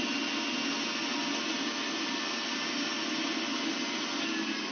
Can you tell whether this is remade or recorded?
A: recorded